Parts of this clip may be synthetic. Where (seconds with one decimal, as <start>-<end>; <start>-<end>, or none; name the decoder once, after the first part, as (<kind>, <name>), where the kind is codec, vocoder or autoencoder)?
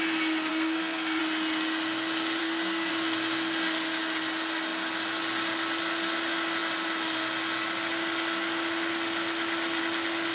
0.5-1.2 (codec, SNAC); 2.4-2.9